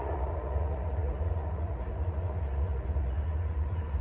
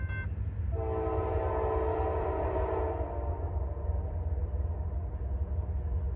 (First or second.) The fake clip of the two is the first